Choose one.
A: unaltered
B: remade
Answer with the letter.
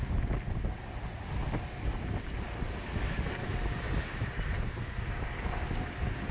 A